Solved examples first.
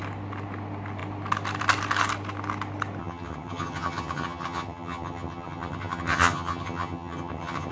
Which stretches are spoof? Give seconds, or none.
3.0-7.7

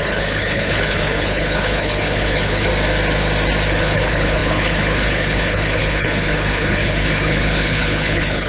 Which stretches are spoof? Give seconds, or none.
0.0-2.7; 3.7-8.5

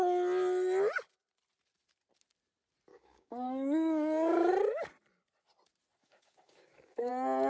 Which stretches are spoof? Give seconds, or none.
2.9-4.5; 6.0-7.1